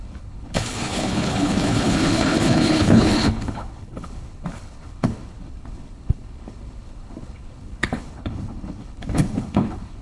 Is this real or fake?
fake